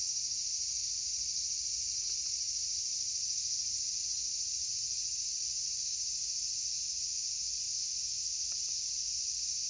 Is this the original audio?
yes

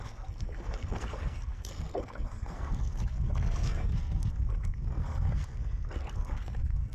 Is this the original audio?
no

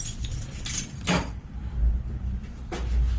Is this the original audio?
yes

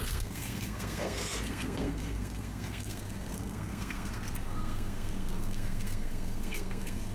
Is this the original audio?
no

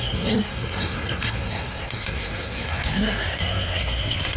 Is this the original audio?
no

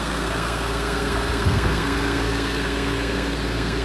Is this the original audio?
no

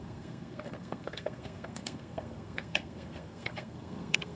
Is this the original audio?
no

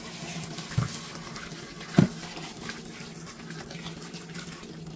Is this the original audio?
yes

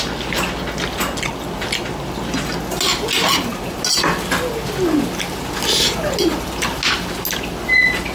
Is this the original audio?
yes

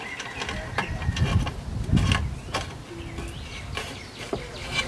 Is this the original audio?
yes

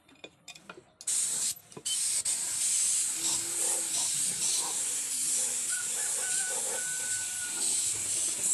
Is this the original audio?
yes